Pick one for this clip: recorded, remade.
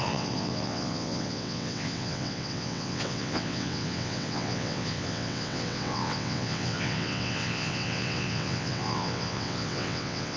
remade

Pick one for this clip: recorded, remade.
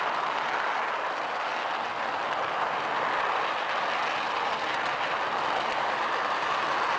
recorded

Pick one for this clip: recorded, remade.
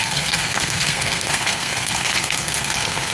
remade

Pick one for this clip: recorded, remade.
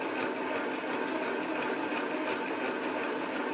recorded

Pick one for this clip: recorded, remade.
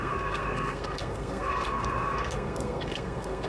remade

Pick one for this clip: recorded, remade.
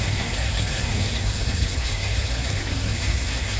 remade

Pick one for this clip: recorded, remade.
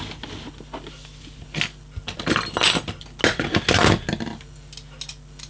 recorded